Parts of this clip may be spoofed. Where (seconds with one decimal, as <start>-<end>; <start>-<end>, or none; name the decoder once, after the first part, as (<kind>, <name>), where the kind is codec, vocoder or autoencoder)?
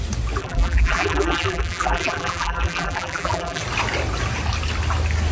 0.4-3.6 (vocoder, BigVGAN v2)